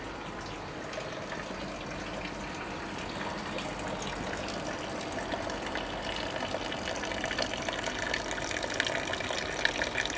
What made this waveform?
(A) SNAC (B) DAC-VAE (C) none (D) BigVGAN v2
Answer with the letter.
C